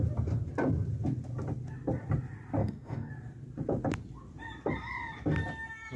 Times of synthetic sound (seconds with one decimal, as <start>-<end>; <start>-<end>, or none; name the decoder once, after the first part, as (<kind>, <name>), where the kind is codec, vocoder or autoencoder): 2.6-3.1 (codec, DAC)